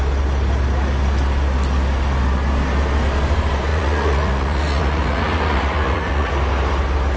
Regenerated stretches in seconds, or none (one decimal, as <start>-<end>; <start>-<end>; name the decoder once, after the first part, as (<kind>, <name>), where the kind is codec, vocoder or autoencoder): 3.7-6.3 (vocoder, Vocos)